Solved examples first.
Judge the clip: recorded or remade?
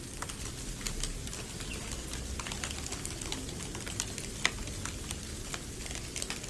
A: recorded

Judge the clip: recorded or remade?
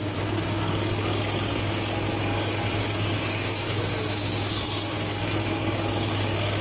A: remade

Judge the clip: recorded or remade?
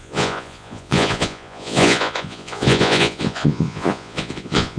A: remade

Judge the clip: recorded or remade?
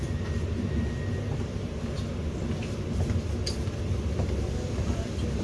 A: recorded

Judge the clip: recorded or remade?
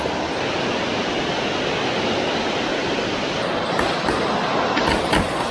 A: recorded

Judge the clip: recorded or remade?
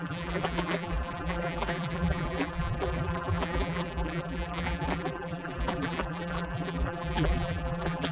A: remade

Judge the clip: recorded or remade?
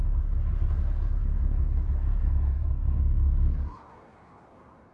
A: remade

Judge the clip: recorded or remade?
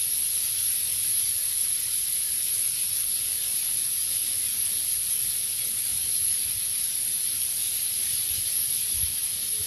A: remade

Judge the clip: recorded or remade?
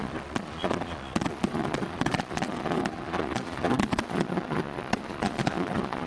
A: remade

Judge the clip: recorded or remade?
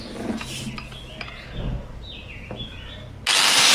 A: recorded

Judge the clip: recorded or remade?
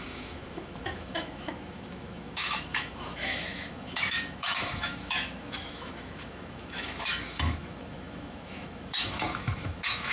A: remade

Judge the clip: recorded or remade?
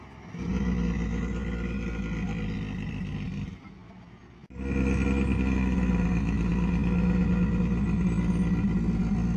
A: recorded